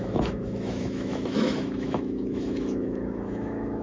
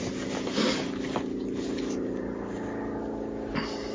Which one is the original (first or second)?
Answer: second